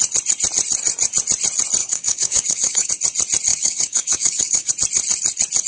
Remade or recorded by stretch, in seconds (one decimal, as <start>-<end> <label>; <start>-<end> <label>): 0.0-1.8 recorded; 1.8-2.9 remade; 2.9-3.5 recorded; 3.5-4.7 remade; 4.7-5.7 recorded